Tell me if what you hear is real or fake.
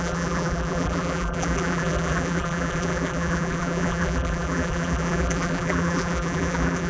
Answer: fake